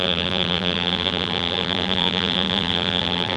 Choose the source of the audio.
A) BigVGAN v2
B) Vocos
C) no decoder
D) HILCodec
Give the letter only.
A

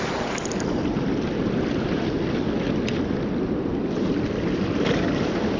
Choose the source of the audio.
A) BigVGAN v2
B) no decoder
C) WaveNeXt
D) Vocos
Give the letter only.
B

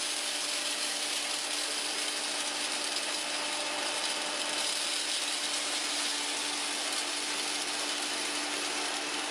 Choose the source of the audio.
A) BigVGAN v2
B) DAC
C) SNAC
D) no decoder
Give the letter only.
D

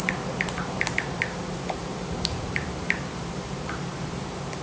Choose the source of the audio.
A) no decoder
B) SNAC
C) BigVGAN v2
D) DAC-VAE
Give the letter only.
C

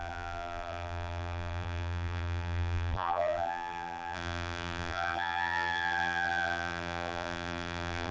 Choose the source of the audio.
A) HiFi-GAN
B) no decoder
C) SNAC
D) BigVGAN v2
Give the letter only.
D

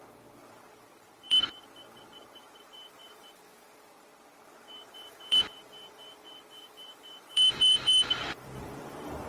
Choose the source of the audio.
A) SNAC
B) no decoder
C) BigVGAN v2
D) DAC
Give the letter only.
C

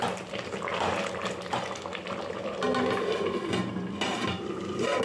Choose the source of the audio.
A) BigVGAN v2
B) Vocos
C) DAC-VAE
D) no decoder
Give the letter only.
D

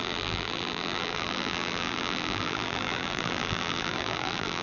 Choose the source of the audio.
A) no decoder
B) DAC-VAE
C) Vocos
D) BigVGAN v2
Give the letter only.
D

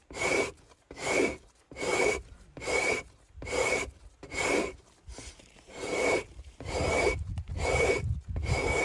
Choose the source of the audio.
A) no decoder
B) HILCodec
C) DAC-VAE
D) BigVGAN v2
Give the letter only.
D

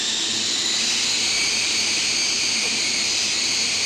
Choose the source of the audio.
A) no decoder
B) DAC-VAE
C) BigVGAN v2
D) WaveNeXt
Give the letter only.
A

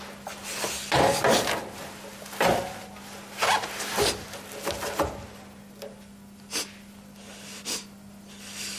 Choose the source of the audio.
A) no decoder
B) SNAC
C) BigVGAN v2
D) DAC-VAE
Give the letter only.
A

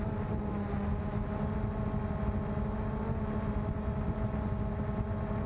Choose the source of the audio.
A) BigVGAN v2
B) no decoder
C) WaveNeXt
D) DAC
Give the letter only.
B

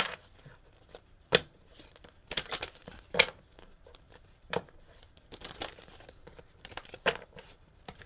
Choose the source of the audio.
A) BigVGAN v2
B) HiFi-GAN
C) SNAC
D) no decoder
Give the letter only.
A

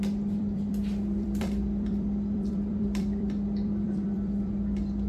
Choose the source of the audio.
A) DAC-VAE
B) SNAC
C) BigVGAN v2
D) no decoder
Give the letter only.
C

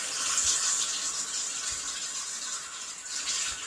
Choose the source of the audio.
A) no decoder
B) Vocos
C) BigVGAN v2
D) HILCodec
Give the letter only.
A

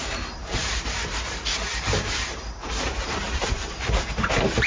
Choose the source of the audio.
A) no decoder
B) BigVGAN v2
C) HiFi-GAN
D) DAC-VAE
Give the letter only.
B